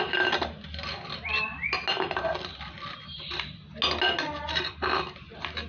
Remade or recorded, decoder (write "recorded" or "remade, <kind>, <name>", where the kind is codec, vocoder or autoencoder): recorded